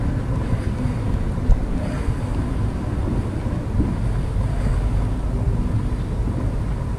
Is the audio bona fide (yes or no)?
yes